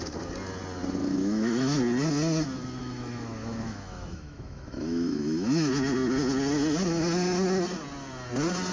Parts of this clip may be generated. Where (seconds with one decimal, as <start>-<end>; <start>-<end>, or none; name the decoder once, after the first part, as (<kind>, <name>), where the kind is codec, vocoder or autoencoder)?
1.0-1.8 (autoencoder, DAC-VAE); 2.8-5.7